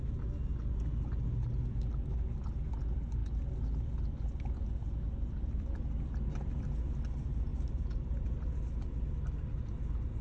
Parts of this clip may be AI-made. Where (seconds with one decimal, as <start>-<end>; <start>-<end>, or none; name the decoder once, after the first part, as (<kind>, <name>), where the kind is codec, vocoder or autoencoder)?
7.5-8.5 (vocoder, BigVGAN v2)

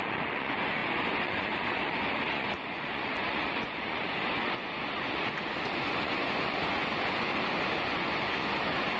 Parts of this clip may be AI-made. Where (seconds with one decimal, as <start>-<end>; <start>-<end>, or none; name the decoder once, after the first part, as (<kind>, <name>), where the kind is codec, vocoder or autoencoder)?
0.0-7.3 (vocoder, Vocos); 7.8-9.0

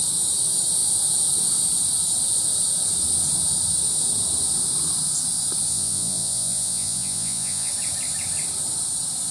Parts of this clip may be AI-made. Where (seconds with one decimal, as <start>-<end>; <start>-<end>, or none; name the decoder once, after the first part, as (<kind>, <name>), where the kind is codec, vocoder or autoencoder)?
5.7-7.7 (vocoder, Vocos)

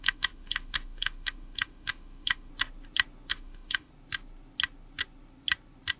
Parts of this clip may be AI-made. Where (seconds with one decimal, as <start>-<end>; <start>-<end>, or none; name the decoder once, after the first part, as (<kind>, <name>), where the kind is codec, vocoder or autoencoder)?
0.0-2.5 (autoencoder, DAC-VAE); 3.3-3.9

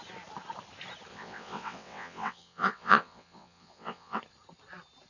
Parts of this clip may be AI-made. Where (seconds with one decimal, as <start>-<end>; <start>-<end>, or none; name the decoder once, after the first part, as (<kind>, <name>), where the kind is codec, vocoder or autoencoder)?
1.1-4.2 (vocoder, WaveNeXt)

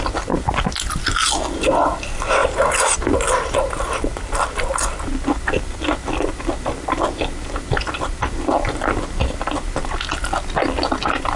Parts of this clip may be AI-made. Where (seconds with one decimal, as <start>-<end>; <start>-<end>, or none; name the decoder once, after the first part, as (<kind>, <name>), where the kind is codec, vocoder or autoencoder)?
none

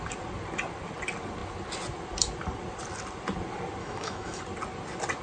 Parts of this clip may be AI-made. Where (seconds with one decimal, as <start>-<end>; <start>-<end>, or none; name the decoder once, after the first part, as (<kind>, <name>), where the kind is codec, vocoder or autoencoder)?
3.8-4.4 (autoencoder, DAC-VAE)